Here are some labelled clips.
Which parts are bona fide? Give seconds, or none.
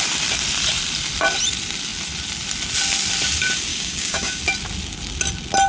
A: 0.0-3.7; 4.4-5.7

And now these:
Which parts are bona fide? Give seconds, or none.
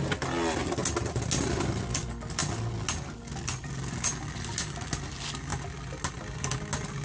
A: 0.0-7.0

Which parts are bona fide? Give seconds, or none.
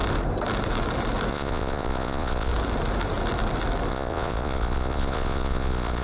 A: 0.0-1.3; 2.5-3.9